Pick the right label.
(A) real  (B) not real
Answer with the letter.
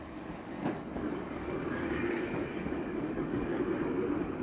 B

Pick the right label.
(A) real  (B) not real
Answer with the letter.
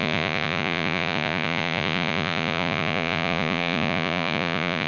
B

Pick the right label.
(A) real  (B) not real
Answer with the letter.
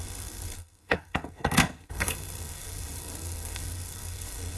B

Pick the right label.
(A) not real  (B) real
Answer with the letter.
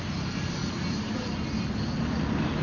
A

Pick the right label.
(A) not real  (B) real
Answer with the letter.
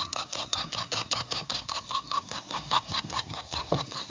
A